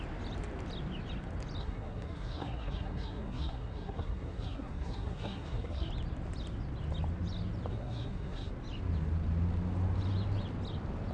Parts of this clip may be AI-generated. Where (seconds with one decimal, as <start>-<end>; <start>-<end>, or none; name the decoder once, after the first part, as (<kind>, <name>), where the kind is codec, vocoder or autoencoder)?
1.6-5.9 (codec, SNAC); 7.7-8.5

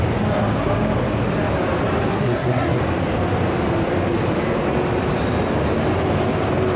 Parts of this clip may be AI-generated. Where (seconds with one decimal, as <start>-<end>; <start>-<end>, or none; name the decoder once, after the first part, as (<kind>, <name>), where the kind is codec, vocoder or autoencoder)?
2.1-2.8 (codec, SNAC)

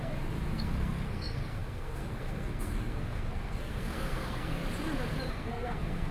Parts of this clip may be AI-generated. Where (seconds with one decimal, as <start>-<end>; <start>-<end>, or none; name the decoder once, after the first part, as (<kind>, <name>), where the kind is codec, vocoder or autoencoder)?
0.0-4.6 (codec, SNAC); 5.3-6.1

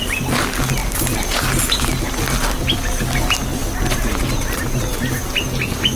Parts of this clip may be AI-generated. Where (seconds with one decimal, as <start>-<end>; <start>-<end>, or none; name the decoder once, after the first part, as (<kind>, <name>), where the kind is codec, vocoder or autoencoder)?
none

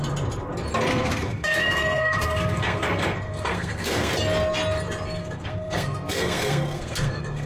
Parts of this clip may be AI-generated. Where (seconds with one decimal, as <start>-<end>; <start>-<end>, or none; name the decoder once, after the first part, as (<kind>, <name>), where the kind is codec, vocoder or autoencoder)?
0.9-4.1 (codec, SNAC); 5.2-7.5

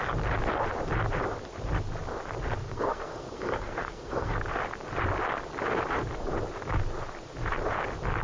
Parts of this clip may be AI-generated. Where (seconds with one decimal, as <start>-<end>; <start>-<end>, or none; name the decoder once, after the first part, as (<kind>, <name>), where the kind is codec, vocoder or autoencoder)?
2.6-4.4 (codec, SNAC)